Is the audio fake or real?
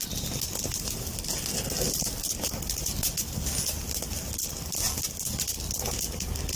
real